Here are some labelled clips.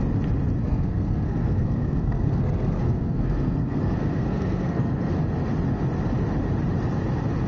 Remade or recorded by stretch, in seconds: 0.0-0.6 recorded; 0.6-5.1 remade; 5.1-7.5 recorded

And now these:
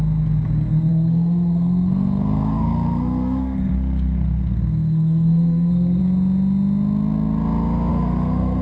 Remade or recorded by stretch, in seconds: 0.0-0.9 recorded; 0.9-6.0 remade; 6.0-7.9 recorded; 7.9-8.6 remade

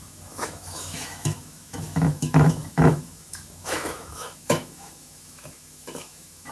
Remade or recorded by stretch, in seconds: 0.0-6.5 remade

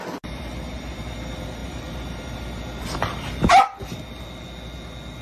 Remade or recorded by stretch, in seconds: 0.0-5.2 recorded

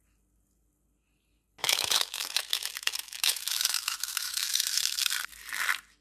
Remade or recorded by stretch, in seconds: 0.0-1.6 recorded; 1.6-5.1 remade; 5.1-6.0 recorded

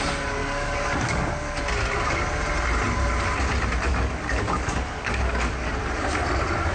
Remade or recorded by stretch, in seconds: 0.0-0.4 recorded; 0.4-1.5 remade; 1.5-3.9 recorded; 3.9-5.7 remade; 5.7-6.7 recorded

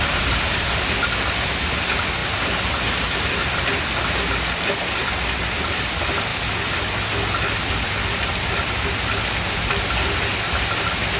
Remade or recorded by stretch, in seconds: 0.0-11.2 recorded

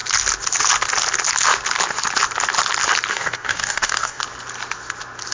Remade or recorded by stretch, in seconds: 0.0-3.1 recorded; 3.1-4.2 remade; 4.2-5.3 recorded